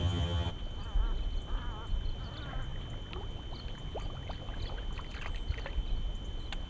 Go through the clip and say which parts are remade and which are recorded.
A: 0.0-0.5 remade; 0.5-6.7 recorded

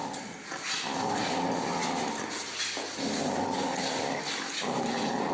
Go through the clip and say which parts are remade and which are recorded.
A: 0.0-5.3 recorded

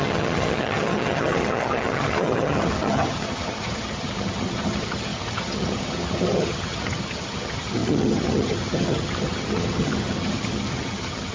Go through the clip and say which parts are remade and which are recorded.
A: 0.0-11.3 remade

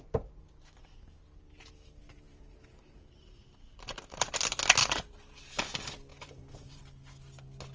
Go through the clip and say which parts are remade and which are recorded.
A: 0.0-2.3 recorded; 2.3-4.3 remade; 4.3-4.8 recorded; 4.8-5.4 remade; 5.4-6.1 recorded; 6.1-6.8 remade; 6.8-7.7 recorded

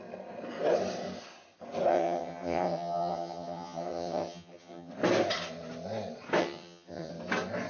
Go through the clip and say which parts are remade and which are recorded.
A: 0.0-1.9 recorded; 1.9-4.9 remade; 4.9-6.4 recorded; 6.4-7.1 remade; 7.1-7.7 recorded

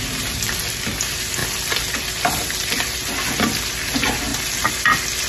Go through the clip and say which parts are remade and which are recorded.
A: 0.0-5.3 recorded

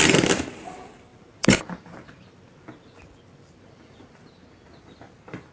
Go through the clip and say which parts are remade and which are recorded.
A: 0.0-1.1 recorded; 1.1-4.4 remade; 4.4-5.5 recorded

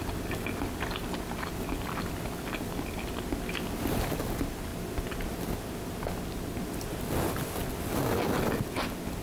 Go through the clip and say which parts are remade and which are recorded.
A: 0.0-9.2 recorded